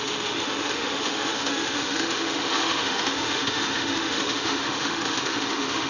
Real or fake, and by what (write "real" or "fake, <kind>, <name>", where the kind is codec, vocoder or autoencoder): fake, autoencoder, DAC-VAE